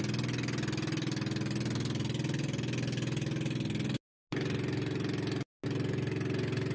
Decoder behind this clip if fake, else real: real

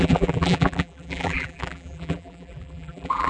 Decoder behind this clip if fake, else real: fake, vocoder, BigVGAN v2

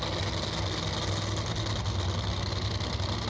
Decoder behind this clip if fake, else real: real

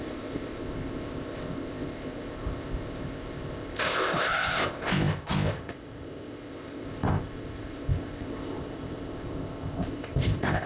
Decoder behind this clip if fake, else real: fake, codec, ZipCodec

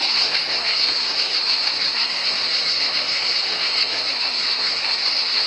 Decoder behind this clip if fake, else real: fake, codec, SNAC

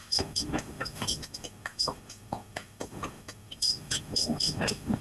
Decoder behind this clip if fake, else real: fake, autoencoder, DAC-VAE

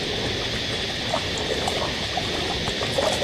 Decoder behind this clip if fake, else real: real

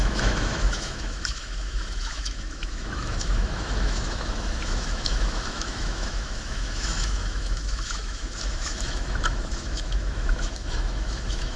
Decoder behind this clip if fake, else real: fake, autoencoder, DAC-VAE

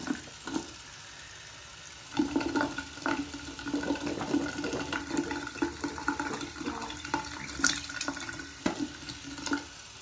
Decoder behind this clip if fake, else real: real